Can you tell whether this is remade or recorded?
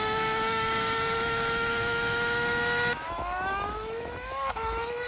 remade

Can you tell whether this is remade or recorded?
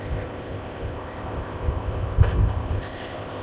remade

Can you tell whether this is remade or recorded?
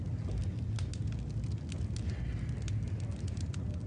recorded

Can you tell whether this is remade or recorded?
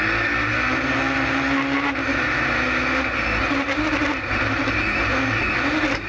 recorded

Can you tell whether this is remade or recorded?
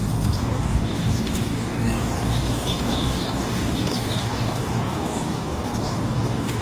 remade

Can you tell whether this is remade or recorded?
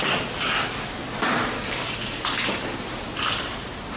recorded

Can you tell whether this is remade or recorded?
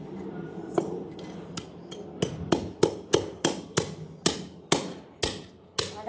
recorded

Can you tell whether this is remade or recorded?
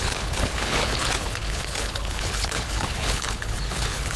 remade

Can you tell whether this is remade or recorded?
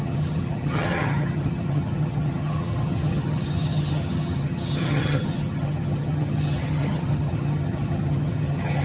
remade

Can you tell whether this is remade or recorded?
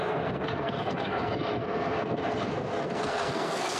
remade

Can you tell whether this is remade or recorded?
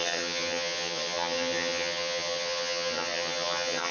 remade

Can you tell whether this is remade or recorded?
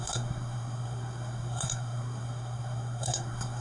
remade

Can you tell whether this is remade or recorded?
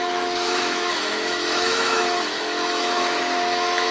remade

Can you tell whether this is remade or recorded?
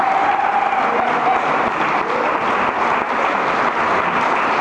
recorded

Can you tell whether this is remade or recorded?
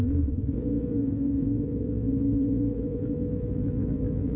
remade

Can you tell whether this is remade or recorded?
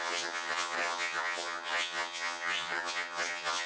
remade